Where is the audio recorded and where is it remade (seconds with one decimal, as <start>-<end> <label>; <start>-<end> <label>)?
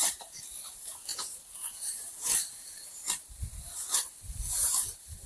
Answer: 0.0-5.3 remade